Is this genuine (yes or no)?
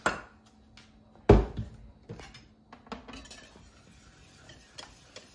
yes